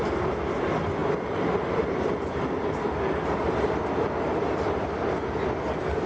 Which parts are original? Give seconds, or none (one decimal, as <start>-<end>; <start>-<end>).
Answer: 0.0-6.1